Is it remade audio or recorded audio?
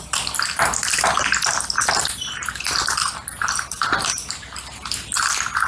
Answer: recorded